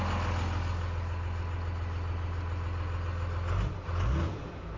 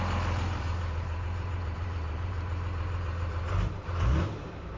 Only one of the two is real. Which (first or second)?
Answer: first